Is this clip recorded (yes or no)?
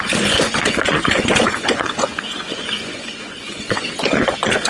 no